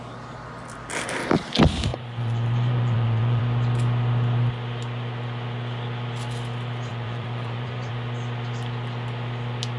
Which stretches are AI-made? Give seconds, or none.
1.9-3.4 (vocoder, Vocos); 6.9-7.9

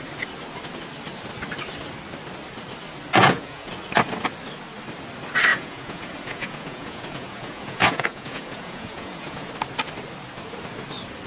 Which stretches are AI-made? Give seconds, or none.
3.2-3.7 (vocoder, Vocos); 5.5-9.5

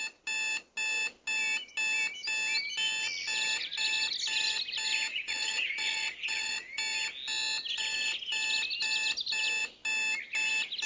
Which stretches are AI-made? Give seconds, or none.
5.1-6.8 (vocoder, Vocos)

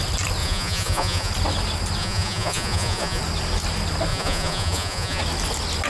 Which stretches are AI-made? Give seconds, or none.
0.4-1.3 (vocoder, Vocos); 2.0-3.2; 4.1-5.2

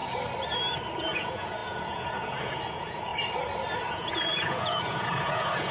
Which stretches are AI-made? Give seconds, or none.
1.0-3.1 (vocoder, Vocos); 3.9-5.7

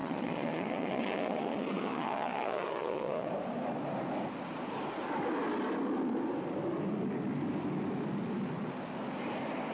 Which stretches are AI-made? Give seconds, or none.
0.0-3.3 (vocoder, Vocos)

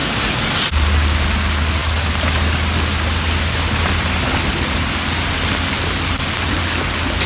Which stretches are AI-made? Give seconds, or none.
none